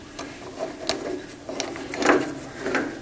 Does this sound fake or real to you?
real